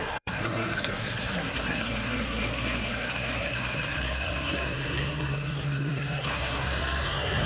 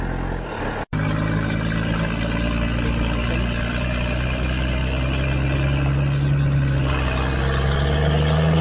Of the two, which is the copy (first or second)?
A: first